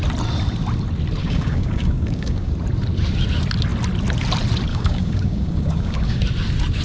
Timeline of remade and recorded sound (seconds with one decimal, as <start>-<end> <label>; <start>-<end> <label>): 0.0-1.2 recorded; 1.2-2.5 remade; 2.5-4.7 recorded; 4.7-6.2 remade; 6.2-6.8 recorded